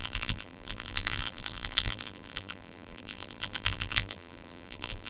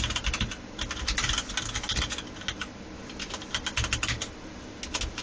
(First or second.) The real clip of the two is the second